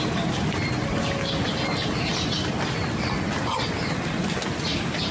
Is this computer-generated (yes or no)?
no